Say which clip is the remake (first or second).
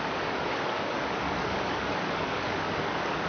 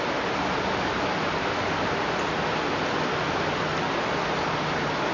first